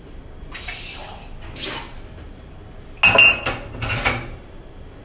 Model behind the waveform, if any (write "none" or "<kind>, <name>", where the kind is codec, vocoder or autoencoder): none